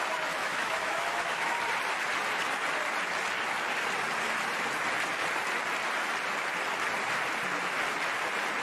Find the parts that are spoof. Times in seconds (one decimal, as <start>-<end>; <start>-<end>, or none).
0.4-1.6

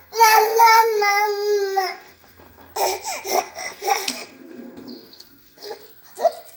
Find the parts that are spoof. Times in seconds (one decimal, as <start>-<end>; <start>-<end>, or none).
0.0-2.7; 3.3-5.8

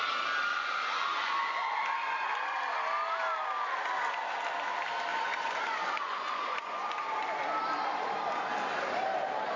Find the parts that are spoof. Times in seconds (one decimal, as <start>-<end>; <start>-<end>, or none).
0.5-2.6; 5.1-7.4

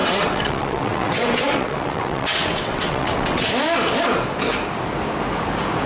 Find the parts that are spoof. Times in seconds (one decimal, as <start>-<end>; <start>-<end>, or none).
0.0-3.5